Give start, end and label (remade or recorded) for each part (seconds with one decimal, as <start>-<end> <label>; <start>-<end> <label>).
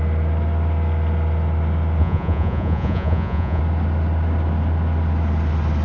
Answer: 0.0-2.0 recorded; 2.0-3.6 remade; 3.6-5.8 recorded